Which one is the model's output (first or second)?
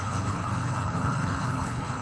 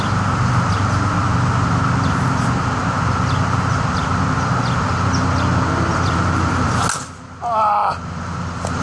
first